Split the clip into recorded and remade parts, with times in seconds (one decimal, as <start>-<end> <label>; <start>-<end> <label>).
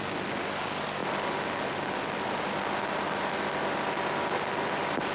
0.0-5.1 recorded